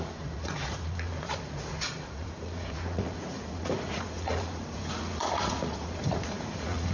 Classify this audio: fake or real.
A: fake